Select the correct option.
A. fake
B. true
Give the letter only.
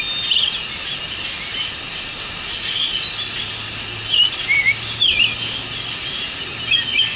B